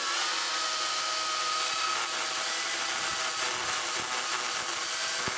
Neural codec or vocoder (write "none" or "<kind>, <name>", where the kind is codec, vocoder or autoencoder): none